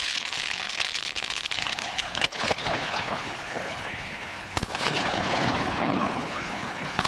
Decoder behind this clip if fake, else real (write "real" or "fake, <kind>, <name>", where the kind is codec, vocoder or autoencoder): fake, codec, HILCodec